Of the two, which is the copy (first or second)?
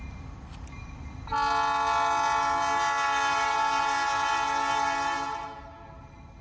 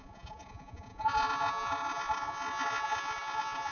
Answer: second